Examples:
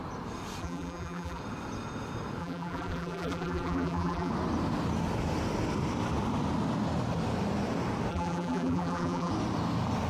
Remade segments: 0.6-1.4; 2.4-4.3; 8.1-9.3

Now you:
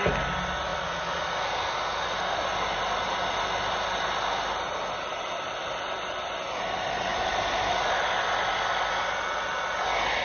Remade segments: 5.1-6.3; 7.1-8.1

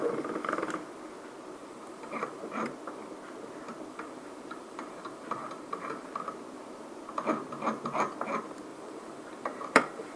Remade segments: 1.6-2.4; 3.9-6.1; 8.7-10.2